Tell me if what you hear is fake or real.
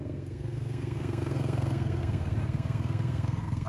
fake